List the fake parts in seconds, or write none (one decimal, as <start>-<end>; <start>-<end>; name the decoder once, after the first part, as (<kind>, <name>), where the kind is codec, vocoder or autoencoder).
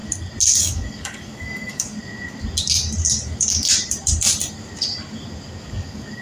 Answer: 0.6-1.9 (codec, DAC); 5.6-6.2